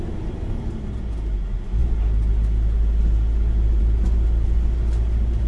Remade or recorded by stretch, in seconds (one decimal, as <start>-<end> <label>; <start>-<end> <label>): 0.0-5.5 recorded